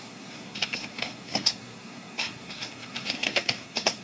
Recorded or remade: remade